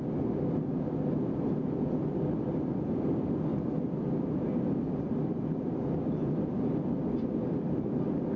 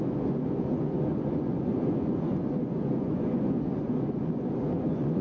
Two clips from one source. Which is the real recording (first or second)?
first